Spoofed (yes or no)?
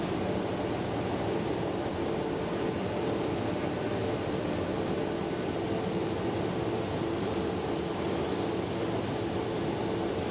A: no